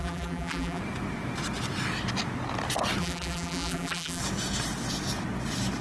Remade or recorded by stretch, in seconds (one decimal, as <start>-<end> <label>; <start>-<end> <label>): 0.0-0.8 remade; 0.8-3.0 recorded; 3.0-4.2 remade; 4.2-5.8 recorded